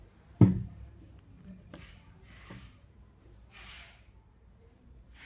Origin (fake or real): fake